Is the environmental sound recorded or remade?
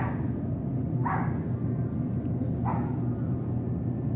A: recorded